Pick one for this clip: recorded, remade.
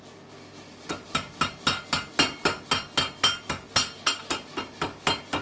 recorded